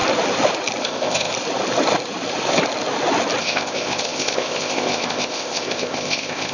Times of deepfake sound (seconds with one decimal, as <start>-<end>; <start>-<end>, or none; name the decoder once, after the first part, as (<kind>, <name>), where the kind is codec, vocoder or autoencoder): 0.8-1.3 (codec, ZipCodec); 3.4-6.5